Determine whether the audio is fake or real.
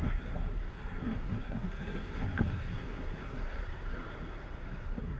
fake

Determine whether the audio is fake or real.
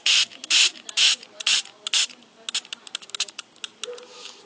real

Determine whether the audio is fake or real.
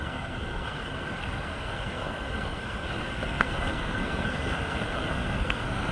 fake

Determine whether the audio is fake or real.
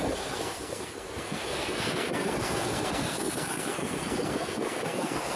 fake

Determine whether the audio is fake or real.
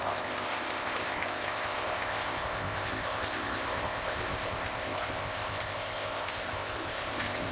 fake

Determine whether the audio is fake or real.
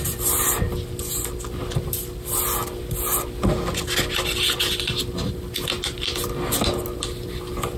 real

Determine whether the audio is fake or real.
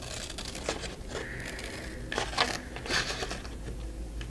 real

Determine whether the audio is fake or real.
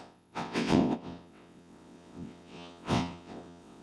fake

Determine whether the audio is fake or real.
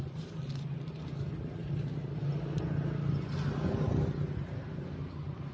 real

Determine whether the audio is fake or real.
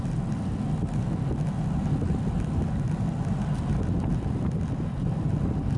real